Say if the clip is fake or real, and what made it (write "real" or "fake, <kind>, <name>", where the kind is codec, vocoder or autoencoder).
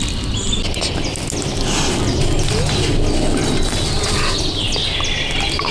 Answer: real